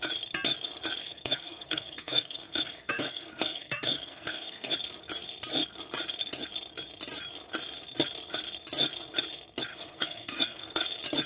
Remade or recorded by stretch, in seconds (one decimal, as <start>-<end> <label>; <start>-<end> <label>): 0.0-1.0 recorded; 1.0-4.7 remade; 4.7-9.7 recorded; 9.7-10.8 remade; 10.8-11.3 recorded